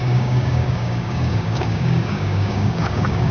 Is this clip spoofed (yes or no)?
yes